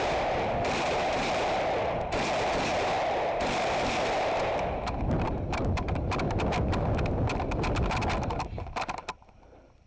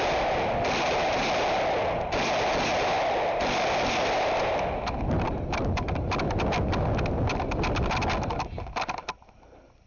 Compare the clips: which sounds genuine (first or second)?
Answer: second